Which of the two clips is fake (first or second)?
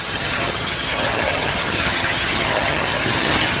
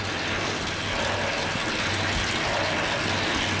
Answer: first